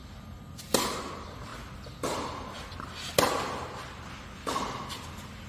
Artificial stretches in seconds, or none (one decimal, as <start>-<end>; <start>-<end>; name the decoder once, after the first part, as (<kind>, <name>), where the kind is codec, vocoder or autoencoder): none